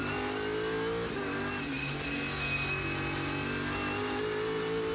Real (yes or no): yes